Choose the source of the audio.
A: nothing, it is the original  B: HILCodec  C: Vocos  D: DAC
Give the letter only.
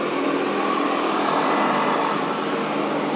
A